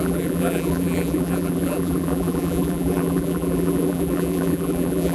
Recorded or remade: remade